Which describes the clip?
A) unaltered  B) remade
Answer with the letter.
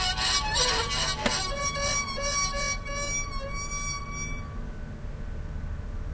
A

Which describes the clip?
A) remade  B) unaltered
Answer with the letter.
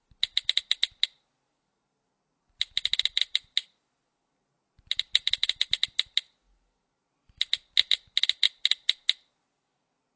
B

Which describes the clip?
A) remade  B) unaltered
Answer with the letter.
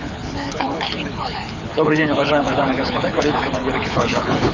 A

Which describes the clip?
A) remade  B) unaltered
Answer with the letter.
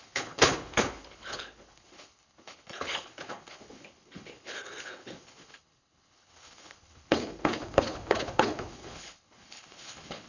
A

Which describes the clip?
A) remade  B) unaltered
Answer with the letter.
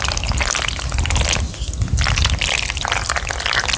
B